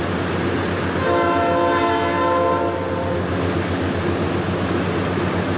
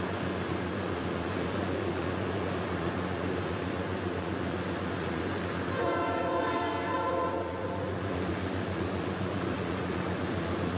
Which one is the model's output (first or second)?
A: second